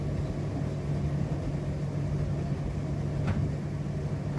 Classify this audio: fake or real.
real